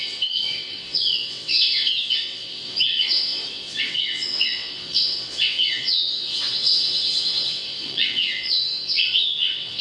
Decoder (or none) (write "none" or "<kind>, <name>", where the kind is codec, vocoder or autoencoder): vocoder, WaveNeXt